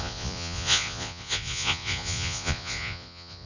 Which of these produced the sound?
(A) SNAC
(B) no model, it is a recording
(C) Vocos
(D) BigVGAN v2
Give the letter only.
C